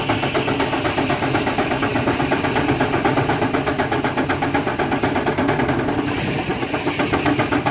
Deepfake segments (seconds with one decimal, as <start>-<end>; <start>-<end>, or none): none